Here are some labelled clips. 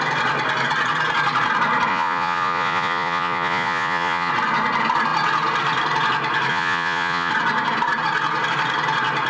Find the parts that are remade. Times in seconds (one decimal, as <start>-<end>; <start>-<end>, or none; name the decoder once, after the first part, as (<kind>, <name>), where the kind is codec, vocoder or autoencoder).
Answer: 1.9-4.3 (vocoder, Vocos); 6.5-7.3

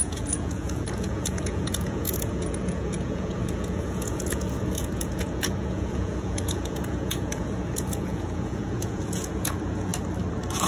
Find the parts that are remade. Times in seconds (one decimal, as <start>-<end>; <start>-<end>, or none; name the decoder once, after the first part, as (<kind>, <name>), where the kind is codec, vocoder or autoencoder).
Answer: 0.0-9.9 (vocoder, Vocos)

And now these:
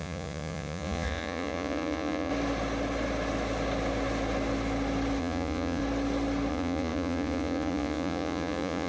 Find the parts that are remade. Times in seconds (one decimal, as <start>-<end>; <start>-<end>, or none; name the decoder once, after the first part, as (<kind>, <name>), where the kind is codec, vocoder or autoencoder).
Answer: 0.0-2.3 (vocoder, Vocos); 5.2-5.8; 6.5-8.9

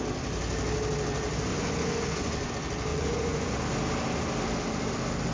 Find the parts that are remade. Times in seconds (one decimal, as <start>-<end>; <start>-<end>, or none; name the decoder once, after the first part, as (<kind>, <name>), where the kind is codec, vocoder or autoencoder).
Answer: 1.5-2.5 (vocoder, Vocos); 2.9-3.5

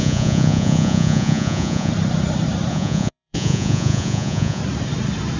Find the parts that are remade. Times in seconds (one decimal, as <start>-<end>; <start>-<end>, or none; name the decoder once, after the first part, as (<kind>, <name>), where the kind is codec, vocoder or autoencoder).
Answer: 0.0-1.9 (vocoder, Vocos); 2.7-4.6

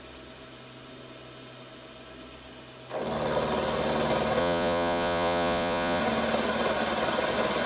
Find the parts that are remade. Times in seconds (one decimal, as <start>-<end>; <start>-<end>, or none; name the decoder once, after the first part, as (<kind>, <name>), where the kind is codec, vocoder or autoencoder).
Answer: 4.4-6.0 (vocoder, Vocos)

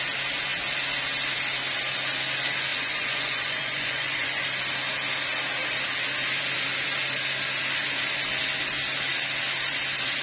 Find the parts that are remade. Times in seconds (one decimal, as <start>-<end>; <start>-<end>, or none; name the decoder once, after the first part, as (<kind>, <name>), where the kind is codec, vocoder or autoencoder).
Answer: 2.7-4.4 (vocoder, Vocos)

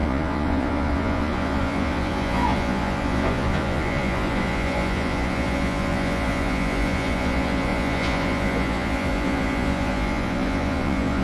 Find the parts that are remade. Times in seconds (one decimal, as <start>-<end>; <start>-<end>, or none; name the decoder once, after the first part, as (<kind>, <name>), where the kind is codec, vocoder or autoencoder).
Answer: 0.0-11.2 (vocoder, Vocos)